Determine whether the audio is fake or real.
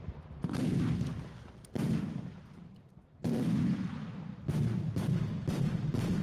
real